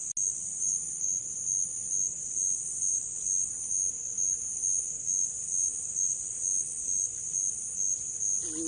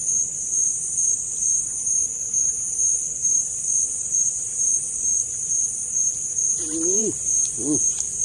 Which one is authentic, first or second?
first